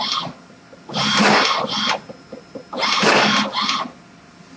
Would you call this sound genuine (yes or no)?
yes